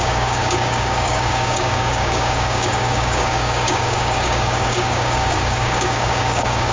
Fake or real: fake